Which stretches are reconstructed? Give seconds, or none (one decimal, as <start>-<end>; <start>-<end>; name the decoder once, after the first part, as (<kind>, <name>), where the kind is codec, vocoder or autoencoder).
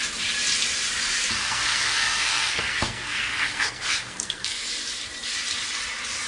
1.4-4.7 (codec, SNAC)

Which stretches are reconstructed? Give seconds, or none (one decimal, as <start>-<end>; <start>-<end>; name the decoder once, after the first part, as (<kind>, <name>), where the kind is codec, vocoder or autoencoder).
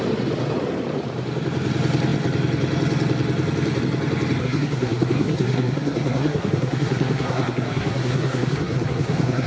4.4-9.5 (codec, SNAC)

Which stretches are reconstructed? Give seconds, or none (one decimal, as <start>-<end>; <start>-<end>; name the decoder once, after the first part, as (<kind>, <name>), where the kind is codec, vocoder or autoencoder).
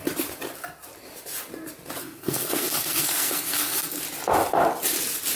2.0-4.0 (codec, SNAC)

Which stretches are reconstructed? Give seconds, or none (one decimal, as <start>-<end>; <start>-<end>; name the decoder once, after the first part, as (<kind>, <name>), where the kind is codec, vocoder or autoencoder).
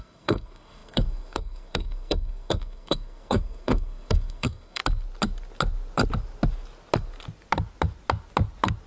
0.0-4.8 (codec, SNAC)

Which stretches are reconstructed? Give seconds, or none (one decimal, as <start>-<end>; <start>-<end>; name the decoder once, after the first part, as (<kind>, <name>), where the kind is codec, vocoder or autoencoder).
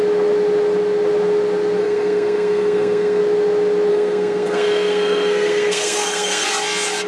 1.8-3.2 (codec, SNAC); 3.9-6.5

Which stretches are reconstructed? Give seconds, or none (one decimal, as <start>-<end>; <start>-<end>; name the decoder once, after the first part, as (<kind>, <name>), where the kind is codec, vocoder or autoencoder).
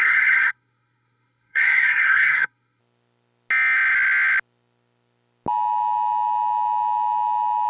0.0-2.8 (codec, SNAC)